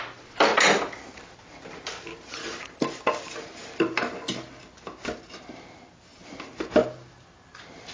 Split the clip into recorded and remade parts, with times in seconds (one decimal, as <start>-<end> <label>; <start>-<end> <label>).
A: 0.0-7.9 recorded